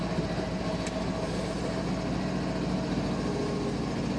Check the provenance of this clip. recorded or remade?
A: recorded